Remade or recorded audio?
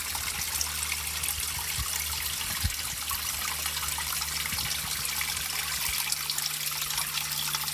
recorded